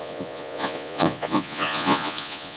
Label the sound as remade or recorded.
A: remade